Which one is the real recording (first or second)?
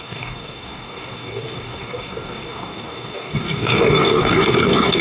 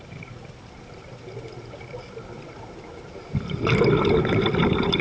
second